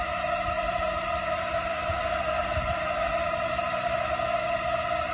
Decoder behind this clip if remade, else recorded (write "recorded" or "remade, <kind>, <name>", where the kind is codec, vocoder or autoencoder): recorded